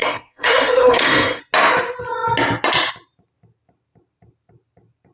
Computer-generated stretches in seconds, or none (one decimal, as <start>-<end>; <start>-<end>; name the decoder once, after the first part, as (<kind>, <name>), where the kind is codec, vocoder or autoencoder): 0.0-1.4 (codec, SNAC)